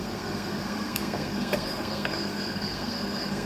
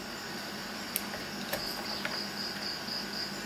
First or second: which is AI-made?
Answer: first